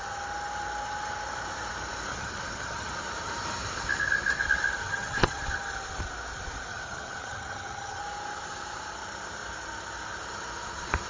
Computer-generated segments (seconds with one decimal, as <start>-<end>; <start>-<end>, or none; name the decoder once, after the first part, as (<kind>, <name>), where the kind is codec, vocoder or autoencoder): 2.1-2.9 (vocoder, HiFi-GAN); 4.8-5.4; 6.7-8.0